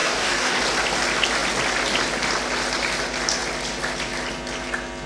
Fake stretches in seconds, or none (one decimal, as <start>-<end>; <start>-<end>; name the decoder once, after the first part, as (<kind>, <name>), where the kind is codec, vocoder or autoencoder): 0.0-0.6 (codec, DAC)